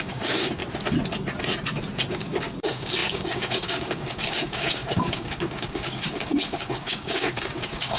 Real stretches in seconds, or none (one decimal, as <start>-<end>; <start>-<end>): 0.6-2.1